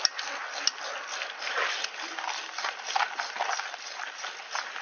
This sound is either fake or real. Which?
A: real